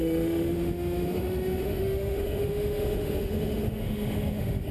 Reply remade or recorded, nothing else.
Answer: remade